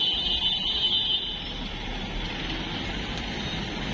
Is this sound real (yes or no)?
yes